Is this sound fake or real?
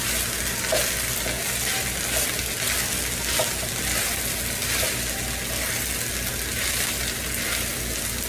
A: real